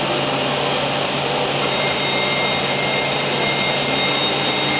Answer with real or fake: real